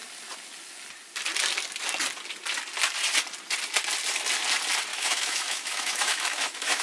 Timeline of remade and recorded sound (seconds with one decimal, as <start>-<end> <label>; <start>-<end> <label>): 0.0-4.9 recorded; 4.9-6.8 remade